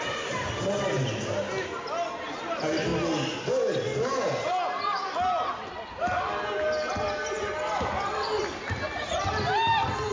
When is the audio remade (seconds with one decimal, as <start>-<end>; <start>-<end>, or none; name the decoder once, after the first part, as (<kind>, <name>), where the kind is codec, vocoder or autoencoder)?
none